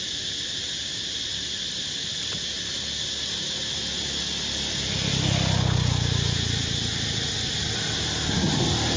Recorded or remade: recorded